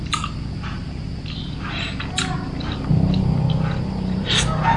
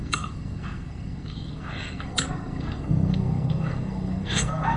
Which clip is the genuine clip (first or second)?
first